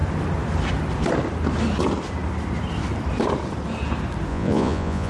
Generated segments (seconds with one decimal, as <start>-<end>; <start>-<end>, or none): 4.3-5.1